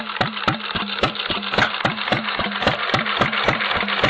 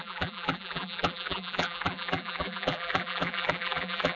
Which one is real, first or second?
first